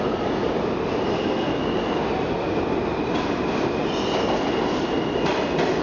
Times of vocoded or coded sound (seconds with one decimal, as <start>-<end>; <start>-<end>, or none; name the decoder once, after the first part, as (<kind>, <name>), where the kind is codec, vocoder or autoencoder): 1.1-1.6 (codec, SNAC)